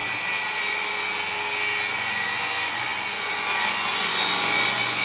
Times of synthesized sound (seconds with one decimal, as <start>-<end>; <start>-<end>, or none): 0.6-1.1; 1.9-5.0